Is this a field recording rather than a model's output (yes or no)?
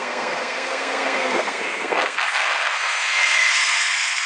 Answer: no